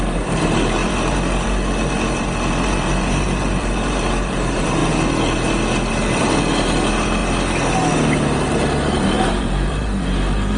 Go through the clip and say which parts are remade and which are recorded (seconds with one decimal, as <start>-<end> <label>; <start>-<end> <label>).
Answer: 0.0-4.8 remade; 4.8-5.9 recorded; 5.9-7.2 remade; 7.2-9.0 recorded; 9.0-10.6 remade